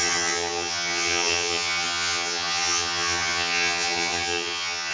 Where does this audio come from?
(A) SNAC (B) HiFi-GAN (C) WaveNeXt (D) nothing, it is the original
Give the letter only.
B